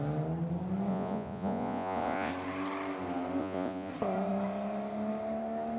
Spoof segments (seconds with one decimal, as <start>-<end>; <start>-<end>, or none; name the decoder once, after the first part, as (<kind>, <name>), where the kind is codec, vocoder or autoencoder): 0.9-2.3 (vocoder, Vocos); 3.4-3.9